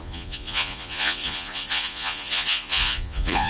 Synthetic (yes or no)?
yes